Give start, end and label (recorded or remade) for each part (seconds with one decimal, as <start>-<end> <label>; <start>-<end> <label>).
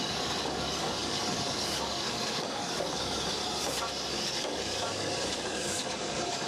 0.0-3.4 remade; 3.4-4.1 recorded; 4.1-6.5 remade